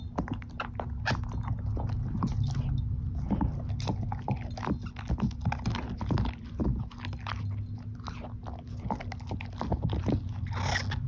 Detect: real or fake real